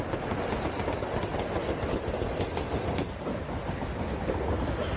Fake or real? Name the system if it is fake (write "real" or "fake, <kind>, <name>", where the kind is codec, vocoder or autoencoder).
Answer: real